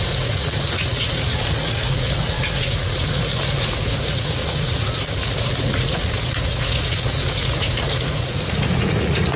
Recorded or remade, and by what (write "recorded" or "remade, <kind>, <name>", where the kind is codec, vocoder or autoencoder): remade, vocoder, Vocos